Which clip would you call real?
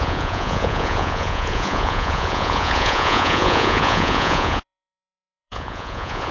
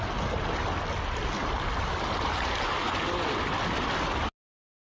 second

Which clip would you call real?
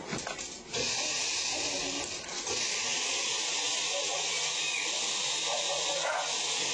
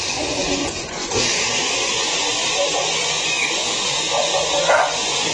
first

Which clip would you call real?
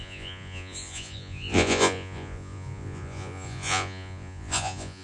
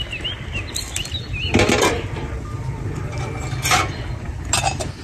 second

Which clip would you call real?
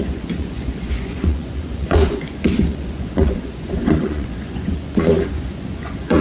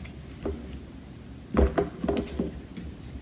second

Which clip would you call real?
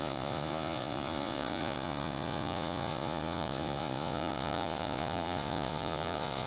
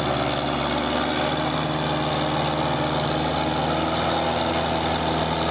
second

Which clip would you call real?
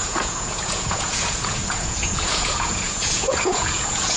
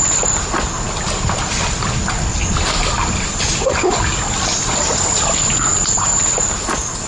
second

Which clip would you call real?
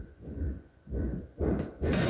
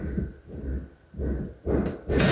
second